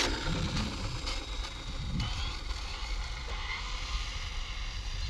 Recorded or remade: recorded